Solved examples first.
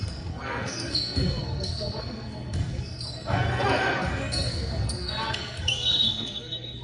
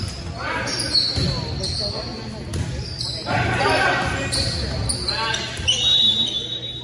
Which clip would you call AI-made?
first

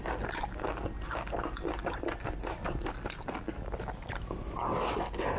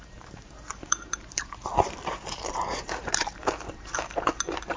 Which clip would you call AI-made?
second